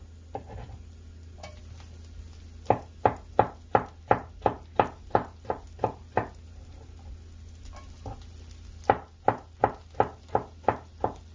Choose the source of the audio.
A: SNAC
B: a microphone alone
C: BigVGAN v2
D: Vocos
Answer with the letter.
B